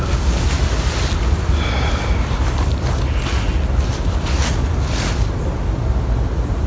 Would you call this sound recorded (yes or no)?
yes